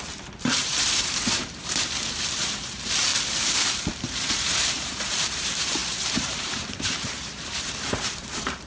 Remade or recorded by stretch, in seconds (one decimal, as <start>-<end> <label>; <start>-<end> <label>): 0.0-3.1 remade; 3.1-3.9 recorded; 3.9-8.7 remade